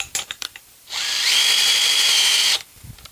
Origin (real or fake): fake